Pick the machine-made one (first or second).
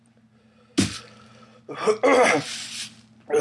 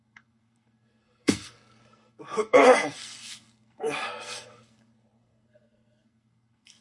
second